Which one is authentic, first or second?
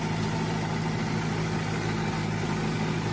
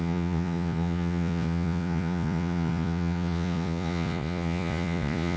first